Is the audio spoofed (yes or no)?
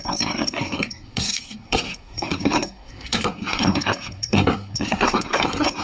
yes